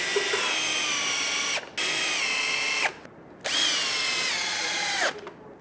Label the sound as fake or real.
real